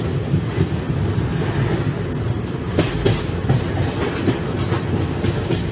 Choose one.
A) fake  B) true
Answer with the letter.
B